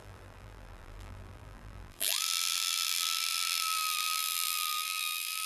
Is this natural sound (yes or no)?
no